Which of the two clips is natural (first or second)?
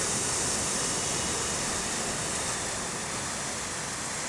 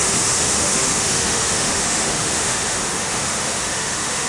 first